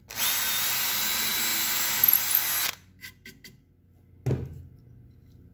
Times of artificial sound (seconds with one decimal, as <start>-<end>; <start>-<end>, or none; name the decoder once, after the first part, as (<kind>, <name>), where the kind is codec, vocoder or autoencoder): none